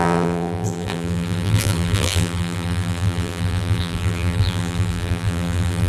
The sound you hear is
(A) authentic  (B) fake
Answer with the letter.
B